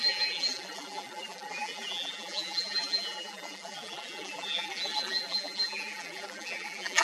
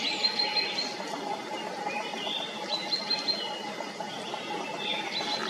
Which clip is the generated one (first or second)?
first